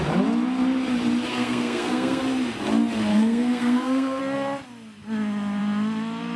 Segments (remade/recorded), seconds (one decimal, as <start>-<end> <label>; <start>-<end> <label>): 0.0-1.3 recorded; 1.3-2.2 remade; 2.2-3.1 recorded; 3.1-4.2 remade; 4.2-6.4 recorded